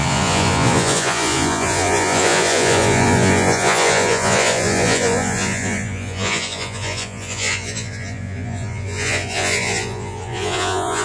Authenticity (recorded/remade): remade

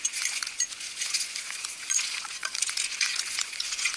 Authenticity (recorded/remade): remade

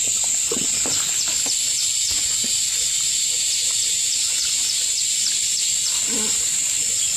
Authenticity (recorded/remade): recorded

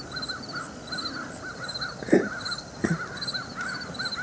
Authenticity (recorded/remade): recorded